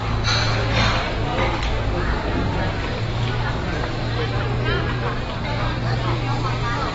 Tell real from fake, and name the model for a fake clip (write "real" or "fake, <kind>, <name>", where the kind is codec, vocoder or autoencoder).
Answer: real